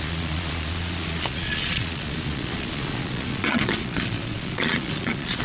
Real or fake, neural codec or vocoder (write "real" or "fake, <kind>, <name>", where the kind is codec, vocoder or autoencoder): fake, vocoder, Vocos